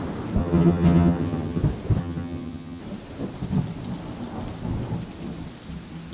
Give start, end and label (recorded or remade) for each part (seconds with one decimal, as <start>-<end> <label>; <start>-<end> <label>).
0.0-0.4 recorded; 0.4-1.6 remade; 1.6-2.0 recorded; 2.0-2.8 remade; 2.8-6.1 recorded

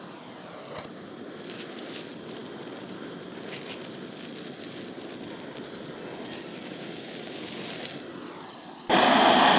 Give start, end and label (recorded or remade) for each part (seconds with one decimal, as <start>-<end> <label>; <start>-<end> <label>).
0.0-9.6 recorded